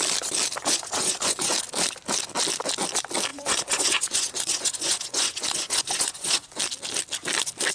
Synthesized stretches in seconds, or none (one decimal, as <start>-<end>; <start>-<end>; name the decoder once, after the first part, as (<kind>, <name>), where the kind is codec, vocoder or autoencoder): 0.6-1.5 (vocoder, Vocos); 3.3-6.6